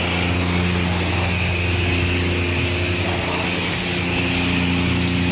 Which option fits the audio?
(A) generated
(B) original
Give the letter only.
B